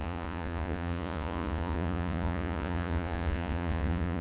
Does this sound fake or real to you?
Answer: fake